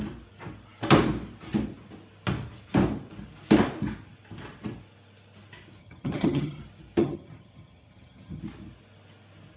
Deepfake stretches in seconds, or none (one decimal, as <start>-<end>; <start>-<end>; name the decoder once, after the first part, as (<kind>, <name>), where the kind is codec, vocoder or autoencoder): 5.8-6.6 (vocoder, HiFi-GAN); 7.0-8.4